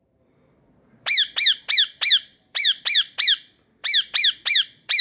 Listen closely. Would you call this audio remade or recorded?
remade